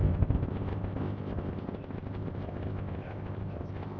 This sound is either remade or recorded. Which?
remade